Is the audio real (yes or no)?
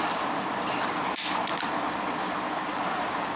yes